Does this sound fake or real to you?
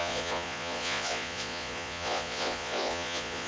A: fake